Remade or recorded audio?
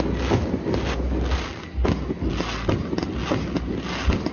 recorded